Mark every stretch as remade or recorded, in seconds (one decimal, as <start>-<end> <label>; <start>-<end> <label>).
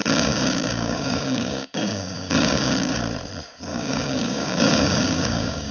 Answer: 0.0-3.0 remade; 3.0-3.7 recorded; 3.7-5.7 remade